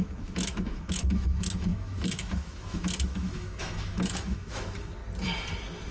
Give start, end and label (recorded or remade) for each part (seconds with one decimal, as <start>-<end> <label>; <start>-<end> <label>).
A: 0.0-5.0 remade; 5.0-5.9 recorded